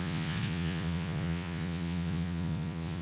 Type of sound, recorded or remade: remade